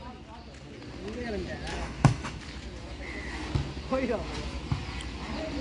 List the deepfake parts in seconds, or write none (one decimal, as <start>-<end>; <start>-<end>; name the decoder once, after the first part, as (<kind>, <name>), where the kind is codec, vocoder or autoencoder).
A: 1.7-2.4 (codec, DAC)

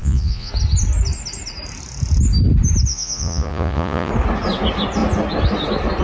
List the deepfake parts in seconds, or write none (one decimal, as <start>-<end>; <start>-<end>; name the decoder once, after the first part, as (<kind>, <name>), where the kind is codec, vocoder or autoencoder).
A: 0.0-0.5 (vocoder, Vocos); 2.9-4.1

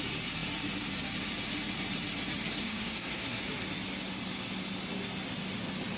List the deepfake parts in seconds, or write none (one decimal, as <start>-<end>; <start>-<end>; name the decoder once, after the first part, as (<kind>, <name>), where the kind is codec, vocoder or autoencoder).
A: 2.6-3.4 (codec, SNAC)

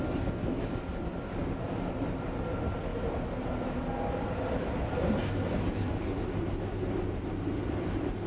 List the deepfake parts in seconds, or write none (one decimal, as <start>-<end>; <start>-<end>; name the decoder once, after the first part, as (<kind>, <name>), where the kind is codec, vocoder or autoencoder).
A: none

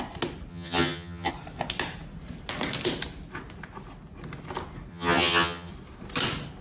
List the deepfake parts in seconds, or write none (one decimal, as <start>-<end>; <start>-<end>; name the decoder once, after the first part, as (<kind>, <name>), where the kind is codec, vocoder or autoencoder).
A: 0.5-1.3 (vocoder, HiFi-GAN); 4.9-5.7

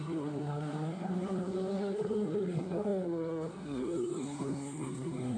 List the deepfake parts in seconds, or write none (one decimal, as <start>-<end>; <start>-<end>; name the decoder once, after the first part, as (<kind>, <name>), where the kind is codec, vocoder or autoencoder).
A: 0.0-5.4 (codec, SNAC)